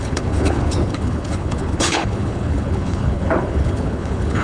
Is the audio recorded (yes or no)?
no